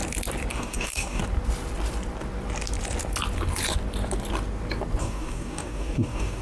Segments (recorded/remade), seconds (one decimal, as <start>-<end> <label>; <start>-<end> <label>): 0.0-0.5 recorded; 0.5-1.2 remade; 1.2-5.0 recorded; 5.0-6.4 remade